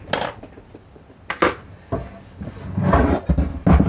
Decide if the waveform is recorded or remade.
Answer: recorded